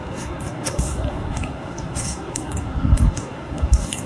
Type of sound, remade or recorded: remade